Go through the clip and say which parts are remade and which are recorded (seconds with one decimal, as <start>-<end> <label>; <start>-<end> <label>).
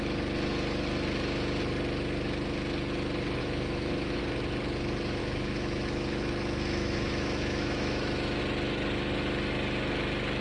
0.0-3.4 recorded; 3.4-4.2 remade; 4.2-5.2 recorded; 5.2-8.4 remade; 8.4-10.4 recorded